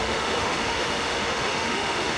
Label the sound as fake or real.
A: fake